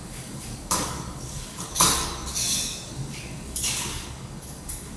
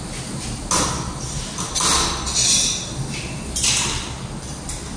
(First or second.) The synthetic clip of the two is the first